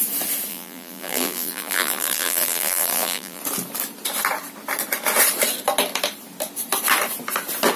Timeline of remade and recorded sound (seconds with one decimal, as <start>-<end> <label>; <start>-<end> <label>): 0.0-0.5 recorded; 0.5-3.4 remade; 3.4-7.8 recorded